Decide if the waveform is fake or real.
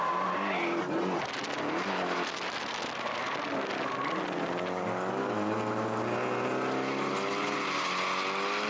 real